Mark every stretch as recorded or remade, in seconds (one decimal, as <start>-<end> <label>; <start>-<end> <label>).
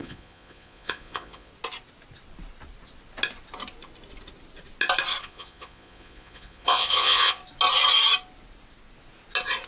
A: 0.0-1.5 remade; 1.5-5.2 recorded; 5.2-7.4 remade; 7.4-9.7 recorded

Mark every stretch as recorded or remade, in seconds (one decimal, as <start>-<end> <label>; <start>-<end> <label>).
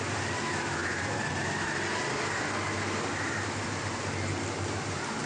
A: 0.0-0.8 recorded; 0.8-4.0 remade; 4.0-5.3 recorded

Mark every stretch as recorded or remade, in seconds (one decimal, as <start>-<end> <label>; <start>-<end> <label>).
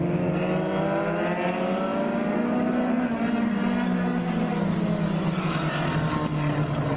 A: 0.0-7.0 recorded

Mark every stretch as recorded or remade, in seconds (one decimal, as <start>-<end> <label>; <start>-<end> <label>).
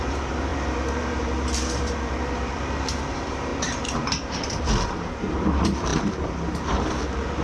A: 0.0-3.5 remade; 3.5-4.1 recorded; 4.1-7.4 remade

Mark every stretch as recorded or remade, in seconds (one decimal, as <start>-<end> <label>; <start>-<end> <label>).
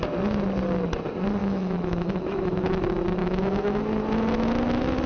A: 0.0-1.4 recorded; 1.4-2.8 remade; 2.8-3.2 recorded; 3.2-3.8 remade; 3.8-5.1 recorded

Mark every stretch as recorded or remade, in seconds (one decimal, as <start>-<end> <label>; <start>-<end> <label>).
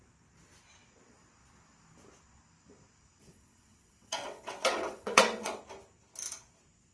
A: 0.0-3.2 recorded; 3.2-5.6 remade; 5.6-6.9 recorded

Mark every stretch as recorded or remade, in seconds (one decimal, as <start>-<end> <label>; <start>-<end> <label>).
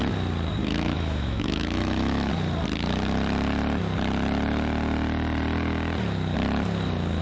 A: 0.0-0.6 recorded; 0.6-2.3 remade; 2.3-7.2 recorded